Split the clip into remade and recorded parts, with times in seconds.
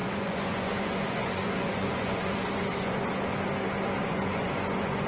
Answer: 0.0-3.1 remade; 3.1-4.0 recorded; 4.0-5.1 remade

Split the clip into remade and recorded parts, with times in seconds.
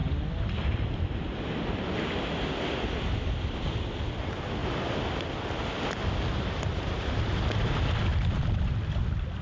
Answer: 0.0-9.4 recorded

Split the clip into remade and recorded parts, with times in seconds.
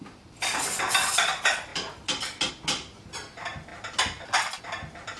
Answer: 0.0-5.2 remade